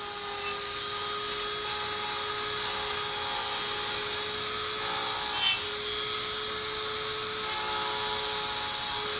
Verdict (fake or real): real